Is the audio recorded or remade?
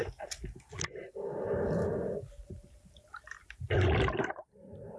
recorded